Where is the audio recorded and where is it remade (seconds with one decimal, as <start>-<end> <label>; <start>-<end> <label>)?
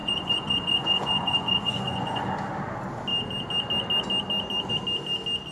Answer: 0.0-2.3 remade; 2.3-5.5 recorded